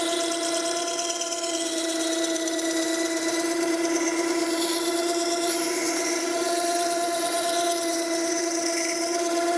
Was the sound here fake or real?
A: fake